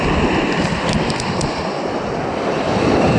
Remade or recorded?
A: recorded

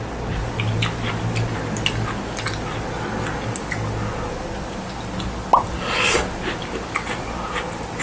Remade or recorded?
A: recorded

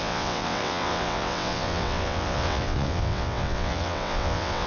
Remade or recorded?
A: remade